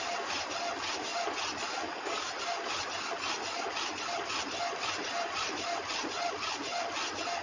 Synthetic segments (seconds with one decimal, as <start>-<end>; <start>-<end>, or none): none